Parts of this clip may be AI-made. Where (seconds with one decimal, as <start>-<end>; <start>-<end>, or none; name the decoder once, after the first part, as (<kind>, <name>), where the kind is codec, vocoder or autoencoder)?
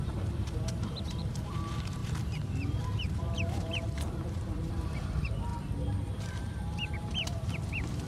0.0-5.5 (vocoder, BigVGAN v2); 6.2-8.1